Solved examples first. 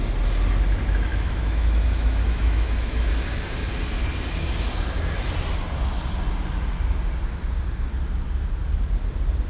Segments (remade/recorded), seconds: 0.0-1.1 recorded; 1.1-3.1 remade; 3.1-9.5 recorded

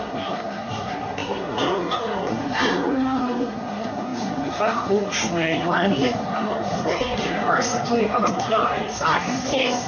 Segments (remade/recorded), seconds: 0.0-9.9 remade

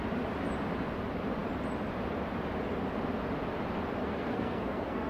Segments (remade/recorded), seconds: 0.0-4.0 recorded; 4.0-5.1 remade

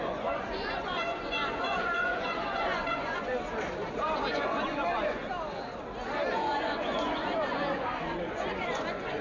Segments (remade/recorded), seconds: 0.0-3.3 remade; 3.3-4.3 recorded; 4.3-5.2 remade; 5.2-6.3 recorded; 6.3-9.2 remade

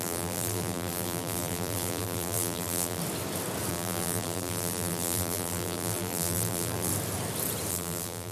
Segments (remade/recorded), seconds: 0.0-3.0 remade; 3.0-3.7 recorded; 3.7-6.9 remade; 6.9-7.7 recorded; 7.7-8.3 remade

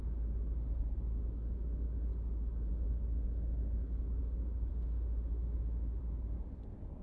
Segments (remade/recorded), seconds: 0.0-4.7 recorded; 4.7-6.0 remade; 6.0-7.0 recorded

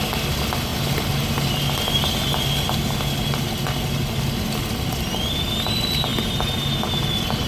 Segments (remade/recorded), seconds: 0.0-7.5 recorded

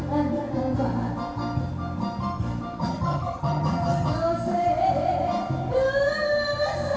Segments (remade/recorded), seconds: 0.0-2.8 recorded; 2.8-4.1 remade; 4.1-7.0 recorded